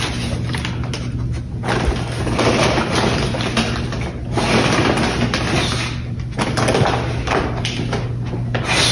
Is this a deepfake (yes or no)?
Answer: no